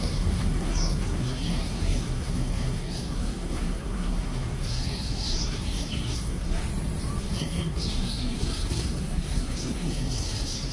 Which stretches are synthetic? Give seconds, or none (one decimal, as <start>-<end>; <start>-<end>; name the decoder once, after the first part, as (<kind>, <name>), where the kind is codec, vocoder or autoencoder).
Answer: 0.0-6.6 (codec, SNAC); 7.2-10.7